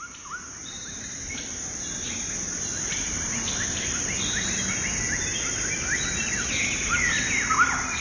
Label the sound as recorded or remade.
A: recorded